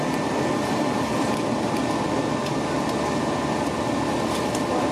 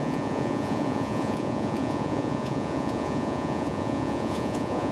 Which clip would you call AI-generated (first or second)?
second